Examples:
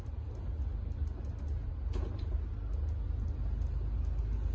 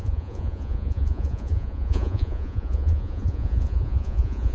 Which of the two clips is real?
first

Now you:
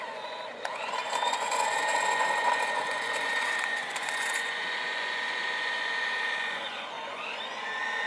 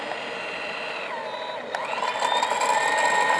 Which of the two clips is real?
second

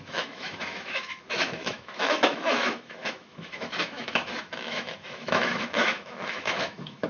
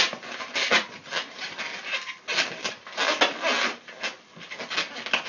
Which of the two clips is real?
second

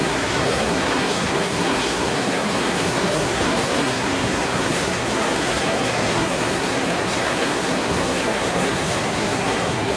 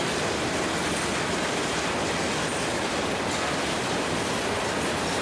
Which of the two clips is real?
second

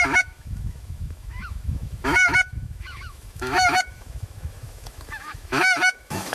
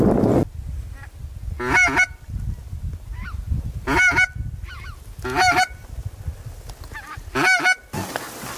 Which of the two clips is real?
second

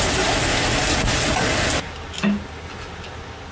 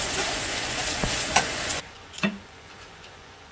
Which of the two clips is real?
first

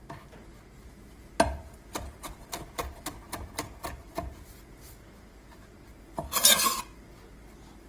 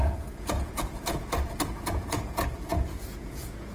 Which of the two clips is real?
first